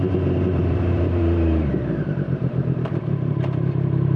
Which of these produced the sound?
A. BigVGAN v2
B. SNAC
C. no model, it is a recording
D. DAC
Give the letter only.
A